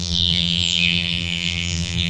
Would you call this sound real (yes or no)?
no